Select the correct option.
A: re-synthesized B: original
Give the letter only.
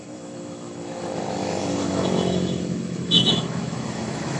A